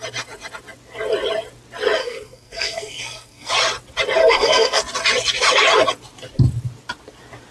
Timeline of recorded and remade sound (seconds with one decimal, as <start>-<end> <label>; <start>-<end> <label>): 0.0-2.0 recorded; 2.0-3.5 remade; 3.5-4.2 recorded; 4.2-4.8 remade; 4.8-7.5 recorded